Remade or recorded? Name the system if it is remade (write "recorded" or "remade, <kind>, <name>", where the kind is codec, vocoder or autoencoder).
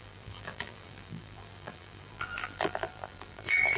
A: remade, vocoder, BigVGAN v2